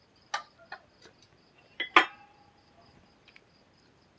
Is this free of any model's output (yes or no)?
yes